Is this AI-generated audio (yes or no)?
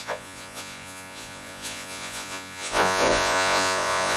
yes